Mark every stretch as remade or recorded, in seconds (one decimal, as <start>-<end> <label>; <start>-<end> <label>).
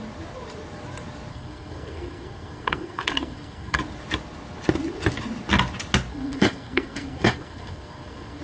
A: 0.0-1.3 recorded; 1.3-3.8 remade; 3.8-6.1 recorded; 6.1-8.4 remade